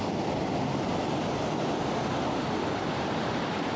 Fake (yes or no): no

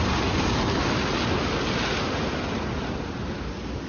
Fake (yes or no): no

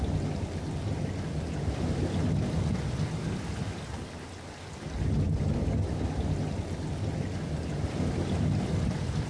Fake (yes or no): no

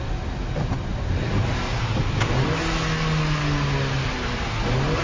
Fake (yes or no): no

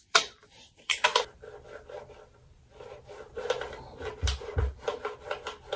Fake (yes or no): yes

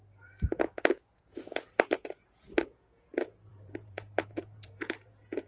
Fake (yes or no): yes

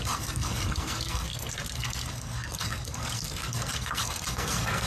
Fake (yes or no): yes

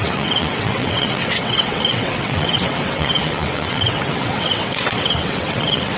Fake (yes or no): yes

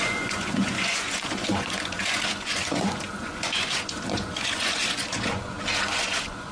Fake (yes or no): yes